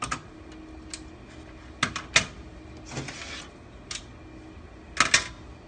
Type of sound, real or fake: real